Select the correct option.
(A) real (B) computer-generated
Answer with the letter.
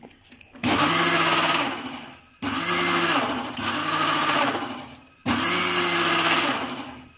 A